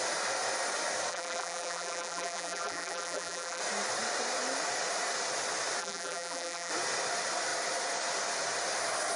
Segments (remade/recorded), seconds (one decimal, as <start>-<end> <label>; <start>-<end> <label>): 0.0-1.1 recorded; 1.1-3.6 remade; 3.6-5.8 recorded; 5.8-6.7 remade; 6.7-9.2 recorded